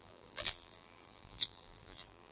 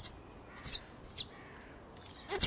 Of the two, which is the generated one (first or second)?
first